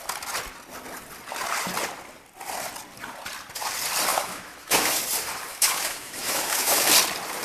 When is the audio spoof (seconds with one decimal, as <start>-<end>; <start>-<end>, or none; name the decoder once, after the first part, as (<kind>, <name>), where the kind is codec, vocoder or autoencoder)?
4.1-5.0 (autoencoder, DAC-VAE); 5.5-6.9